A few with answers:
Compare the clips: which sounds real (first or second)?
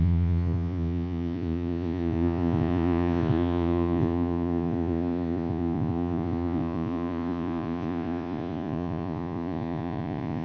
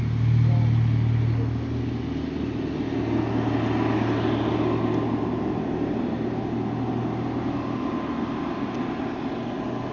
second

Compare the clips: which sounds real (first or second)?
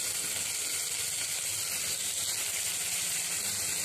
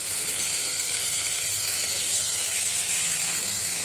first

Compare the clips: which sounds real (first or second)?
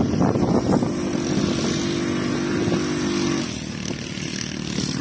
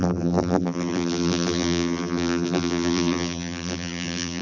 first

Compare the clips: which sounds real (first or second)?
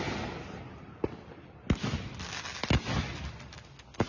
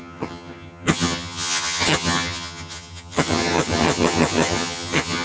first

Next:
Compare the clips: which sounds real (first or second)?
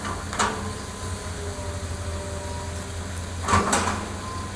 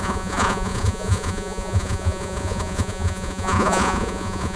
first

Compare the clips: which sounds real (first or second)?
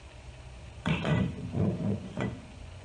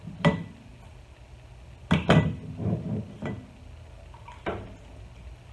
second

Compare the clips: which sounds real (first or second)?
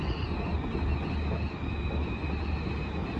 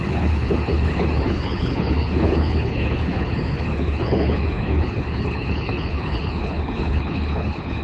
first